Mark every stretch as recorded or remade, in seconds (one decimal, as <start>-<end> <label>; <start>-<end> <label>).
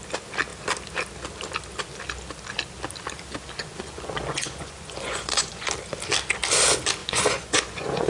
0.0-3.6 recorded; 3.6-5.7 remade; 5.7-7.0 recorded; 7.0-8.1 remade